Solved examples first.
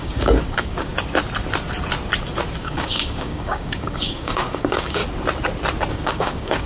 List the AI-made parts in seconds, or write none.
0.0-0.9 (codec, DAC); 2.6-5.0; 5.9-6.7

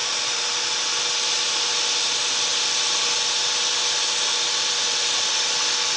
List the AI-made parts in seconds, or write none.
none

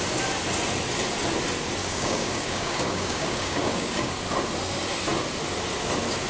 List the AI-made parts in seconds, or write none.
1.8-4.1 (codec, DAC)

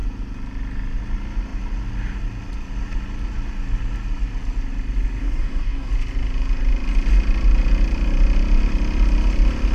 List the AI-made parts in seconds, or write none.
5.2-5.9 (codec, DAC)

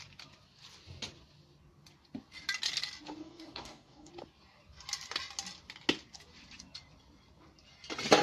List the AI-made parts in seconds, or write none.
3.2-4.1 (codec, DAC)

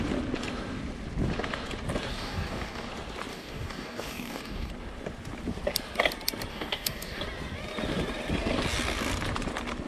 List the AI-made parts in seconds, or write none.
2.1-2.9 (codec, DAC); 3.3-4.7; 6.5-7.2